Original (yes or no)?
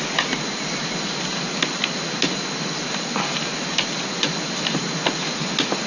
yes